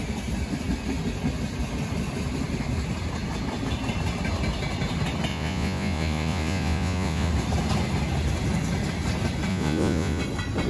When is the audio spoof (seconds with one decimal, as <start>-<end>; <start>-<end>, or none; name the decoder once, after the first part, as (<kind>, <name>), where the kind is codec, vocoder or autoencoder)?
5.3-7.3 (vocoder, Vocos); 9.5-10.2